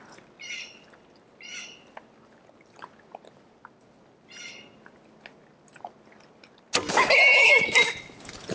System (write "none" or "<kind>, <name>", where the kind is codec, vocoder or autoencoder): none